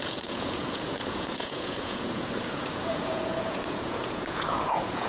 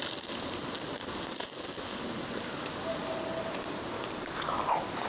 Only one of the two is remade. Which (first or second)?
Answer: first